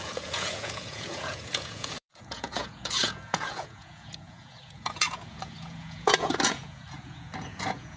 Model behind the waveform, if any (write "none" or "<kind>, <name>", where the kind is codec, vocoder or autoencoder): vocoder, Vocos